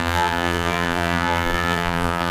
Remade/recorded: remade